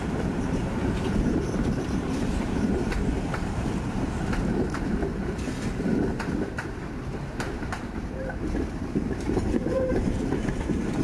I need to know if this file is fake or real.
fake